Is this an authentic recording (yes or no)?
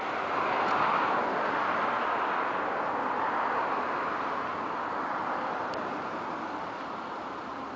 yes